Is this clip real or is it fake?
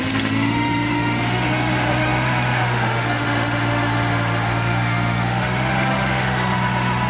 fake